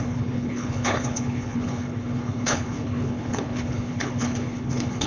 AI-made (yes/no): yes